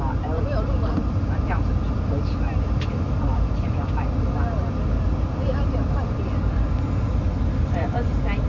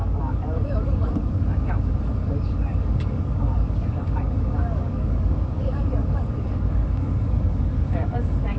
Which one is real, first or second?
first